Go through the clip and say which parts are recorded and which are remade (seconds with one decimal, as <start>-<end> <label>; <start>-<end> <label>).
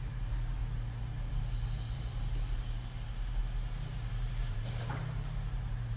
0.0-0.6 remade; 0.6-1.3 recorded; 1.3-3.4 remade; 3.4-4.1 recorded; 4.1-6.0 remade